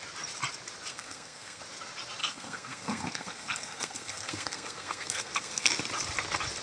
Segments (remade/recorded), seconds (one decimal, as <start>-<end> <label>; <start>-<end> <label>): 0.0-0.9 recorded; 0.9-1.6 remade; 1.6-2.2 recorded; 2.2-5.7 remade; 5.7-6.6 recorded